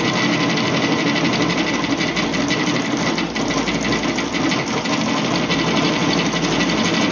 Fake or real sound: real